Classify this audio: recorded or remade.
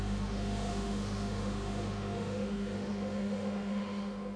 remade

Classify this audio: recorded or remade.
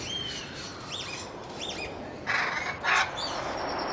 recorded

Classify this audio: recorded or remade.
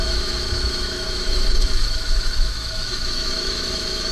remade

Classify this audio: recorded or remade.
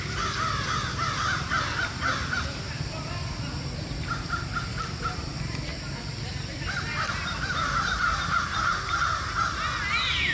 recorded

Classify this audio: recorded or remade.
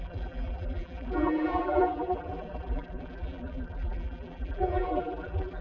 remade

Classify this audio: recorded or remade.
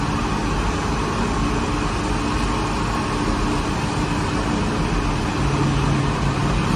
recorded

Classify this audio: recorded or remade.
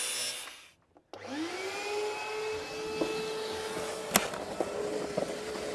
recorded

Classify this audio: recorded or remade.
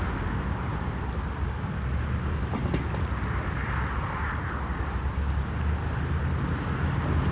recorded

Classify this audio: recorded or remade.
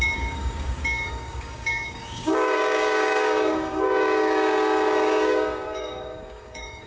remade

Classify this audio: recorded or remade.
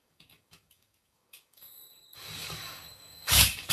remade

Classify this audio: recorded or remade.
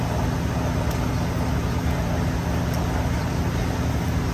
recorded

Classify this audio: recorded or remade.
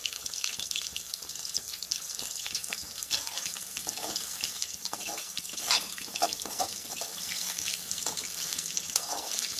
remade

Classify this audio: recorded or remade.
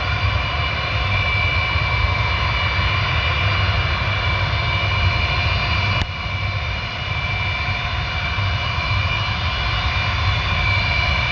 recorded